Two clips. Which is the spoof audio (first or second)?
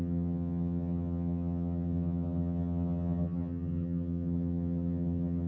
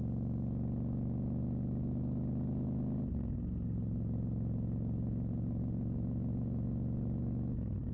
first